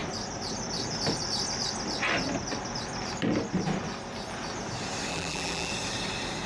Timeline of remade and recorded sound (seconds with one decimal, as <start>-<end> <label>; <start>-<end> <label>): 0.0-5.1 recorded; 5.1-5.7 remade; 5.7-6.5 recorded